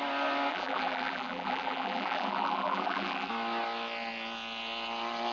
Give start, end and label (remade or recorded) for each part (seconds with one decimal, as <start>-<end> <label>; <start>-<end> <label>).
0.0-0.5 recorded; 0.5-3.3 remade; 3.3-5.3 recorded

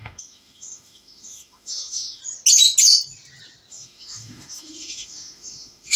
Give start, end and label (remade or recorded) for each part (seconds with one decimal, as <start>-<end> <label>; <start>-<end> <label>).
0.0-2.2 remade; 2.2-3.7 recorded; 3.7-6.0 remade

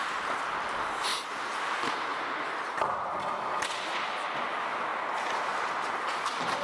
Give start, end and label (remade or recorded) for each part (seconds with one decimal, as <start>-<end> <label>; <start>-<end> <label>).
0.0-6.6 recorded

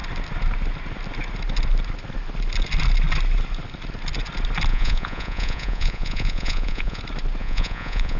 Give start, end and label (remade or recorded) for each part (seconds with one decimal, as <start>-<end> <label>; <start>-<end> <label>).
0.0-4.7 recorded; 4.7-7.0 remade; 7.0-7.4 recorded; 7.4-8.2 remade